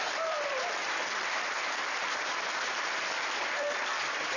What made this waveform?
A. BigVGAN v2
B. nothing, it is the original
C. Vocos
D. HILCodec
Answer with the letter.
B